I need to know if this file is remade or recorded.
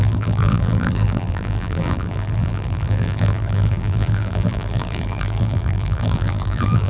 remade